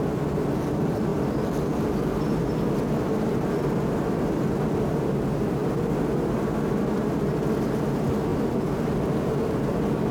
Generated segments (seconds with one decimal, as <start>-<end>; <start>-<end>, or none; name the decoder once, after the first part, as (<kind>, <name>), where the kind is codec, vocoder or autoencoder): none